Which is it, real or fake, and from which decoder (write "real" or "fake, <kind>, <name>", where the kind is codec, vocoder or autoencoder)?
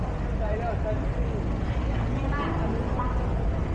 real